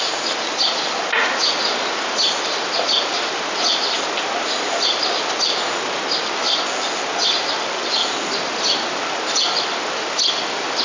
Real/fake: real